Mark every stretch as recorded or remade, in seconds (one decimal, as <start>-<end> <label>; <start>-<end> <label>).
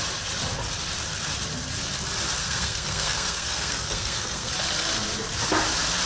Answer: 0.0-2.4 recorded; 2.4-4.5 remade; 4.5-6.1 recorded